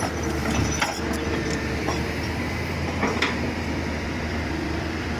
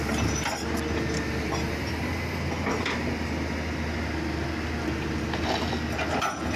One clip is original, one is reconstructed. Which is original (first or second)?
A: second